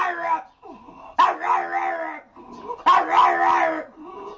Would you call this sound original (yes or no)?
yes